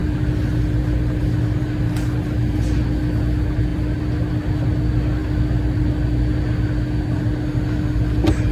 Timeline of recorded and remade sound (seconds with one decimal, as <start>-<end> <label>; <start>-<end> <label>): 0.0-3.7 recorded; 3.7-4.3 remade; 4.3-8.5 recorded